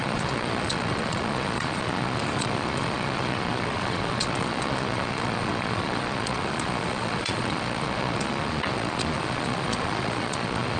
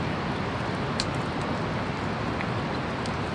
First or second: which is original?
second